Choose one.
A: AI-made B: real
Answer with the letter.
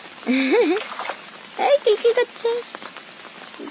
B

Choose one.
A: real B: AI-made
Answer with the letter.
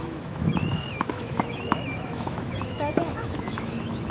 B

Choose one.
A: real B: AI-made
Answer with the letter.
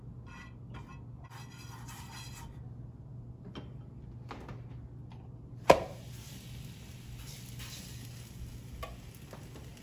A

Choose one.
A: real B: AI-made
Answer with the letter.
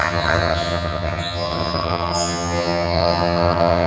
B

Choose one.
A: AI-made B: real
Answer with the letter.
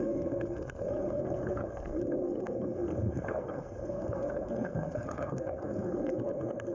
A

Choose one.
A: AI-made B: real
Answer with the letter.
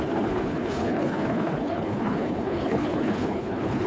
A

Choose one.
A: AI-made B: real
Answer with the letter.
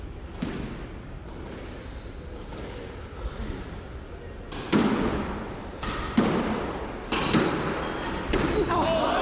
B